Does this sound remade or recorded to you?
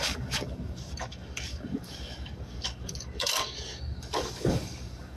remade